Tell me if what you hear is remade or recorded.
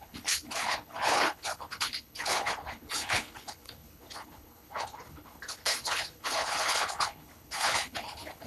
remade